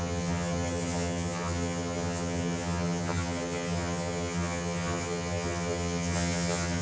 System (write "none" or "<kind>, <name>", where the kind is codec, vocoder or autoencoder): vocoder, HiFi-GAN